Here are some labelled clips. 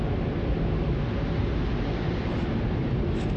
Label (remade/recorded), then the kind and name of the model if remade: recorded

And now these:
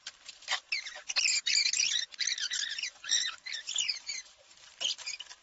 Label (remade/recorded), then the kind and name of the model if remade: recorded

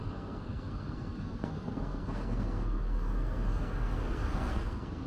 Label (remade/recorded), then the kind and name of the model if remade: remade, codec, SNAC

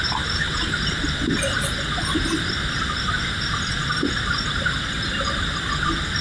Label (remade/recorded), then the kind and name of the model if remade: recorded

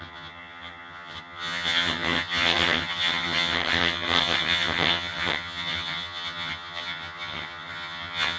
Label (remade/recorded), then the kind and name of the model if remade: remade, vocoder, HiFi-GAN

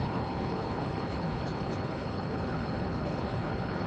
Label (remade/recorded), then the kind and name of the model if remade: remade, codec, HILCodec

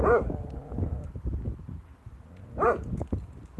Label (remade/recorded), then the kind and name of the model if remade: recorded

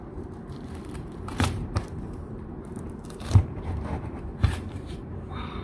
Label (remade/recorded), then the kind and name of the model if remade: remade, vocoder, BigVGAN v2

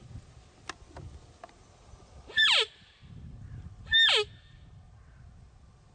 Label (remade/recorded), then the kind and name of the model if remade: recorded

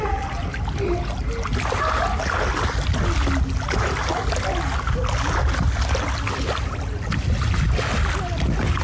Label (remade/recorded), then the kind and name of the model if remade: recorded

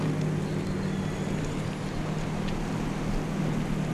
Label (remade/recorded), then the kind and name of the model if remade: recorded